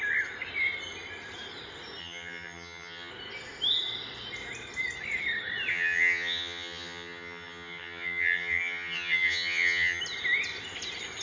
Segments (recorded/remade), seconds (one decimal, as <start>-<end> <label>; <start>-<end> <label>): 0.0-2.0 recorded; 2.0-3.1 remade; 3.1-5.7 recorded; 5.7-10.0 remade; 10.0-11.2 recorded

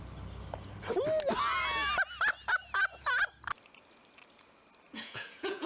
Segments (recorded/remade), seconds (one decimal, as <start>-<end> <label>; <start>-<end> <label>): 0.0-4.9 recorded; 4.9-5.7 remade

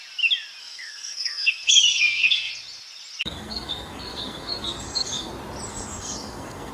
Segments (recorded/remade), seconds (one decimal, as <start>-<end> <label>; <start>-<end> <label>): 0.0-0.6 recorded; 0.6-2.5 remade; 2.5-3.2 recorded; 3.2-5.3 remade; 5.3-5.7 recorded; 5.7-6.7 remade

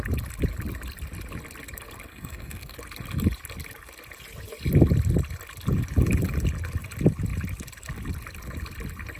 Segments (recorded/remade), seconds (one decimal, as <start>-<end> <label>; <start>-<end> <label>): 0.0-2.1 recorded; 2.1-2.7 remade; 2.7-9.2 recorded

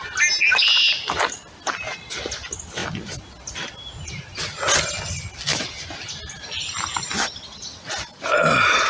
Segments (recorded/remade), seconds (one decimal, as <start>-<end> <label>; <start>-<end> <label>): 0.0-8.9 recorded

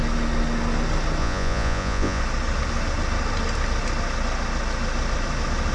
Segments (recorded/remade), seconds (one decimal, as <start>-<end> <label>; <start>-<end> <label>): 0.0-1.2 recorded; 1.2-2.2 remade; 2.2-5.7 recorded